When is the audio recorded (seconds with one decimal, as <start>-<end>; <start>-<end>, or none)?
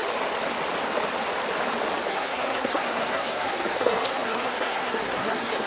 0.0-2.1